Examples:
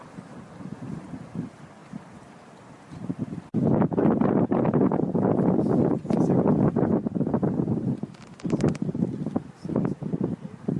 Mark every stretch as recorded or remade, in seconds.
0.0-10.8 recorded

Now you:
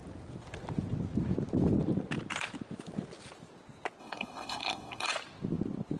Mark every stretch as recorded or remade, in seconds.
0.0-4.0 recorded; 4.0-5.1 remade; 5.1-6.0 recorded